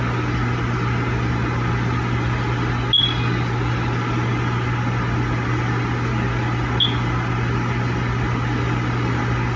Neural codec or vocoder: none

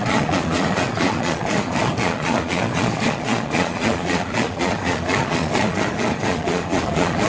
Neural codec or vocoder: vocoder, Vocos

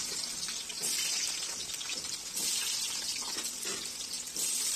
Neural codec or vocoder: none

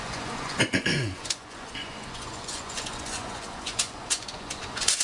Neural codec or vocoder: vocoder, Vocos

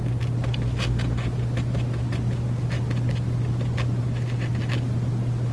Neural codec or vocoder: none